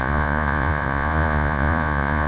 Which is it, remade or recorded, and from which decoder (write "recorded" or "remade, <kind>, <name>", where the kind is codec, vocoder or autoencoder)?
remade, vocoder, Vocos